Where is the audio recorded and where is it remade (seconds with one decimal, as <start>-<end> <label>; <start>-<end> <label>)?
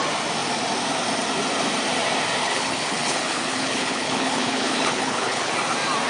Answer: 0.0-2.4 recorded; 2.4-5.5 remade; 5.5-6.1 recorded